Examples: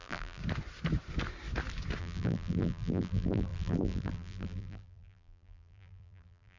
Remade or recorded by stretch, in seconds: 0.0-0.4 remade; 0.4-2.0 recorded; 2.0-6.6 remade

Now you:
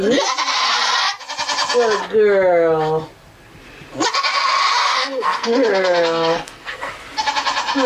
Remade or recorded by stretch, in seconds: 0.0-4.8 recorded; 4.8-6.9 remade; 6.9-7.9 recorded

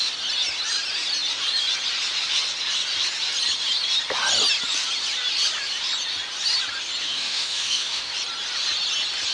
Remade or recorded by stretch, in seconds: 0.0-7.0 recorded; 7.0-8.1 remade; 8.1-9.3 recorded

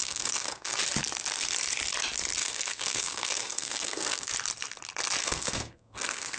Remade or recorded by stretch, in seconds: 0.0-0.8 remade; 0.8-2.4 recorded; 2.4-4.3 remade; 4.3-5.2 recorded; 5.2-6.4 remade

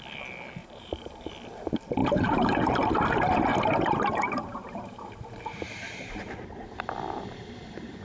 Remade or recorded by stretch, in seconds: 0.0-0.6 recorded; 0.6-1.3 remade; 1.3-2.0 recorded; 2.0-2.8 remade; 2.8-3.5 recorded; 3.5-6.8 remade; 6.8-8.0 recorded

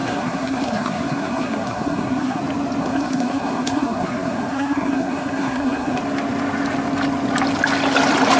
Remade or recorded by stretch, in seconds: 0.0-2.4 remade; 2.4-2.8 recorded; 2.8-6.0 remade; 6.0-8.4 recorded

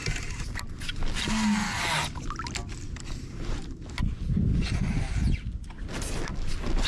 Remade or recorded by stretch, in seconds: 0.0-4.5 recorded; 4.5-5.0 remade; 5.0-6.9 recorded